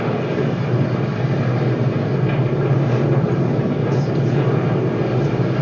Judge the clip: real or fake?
real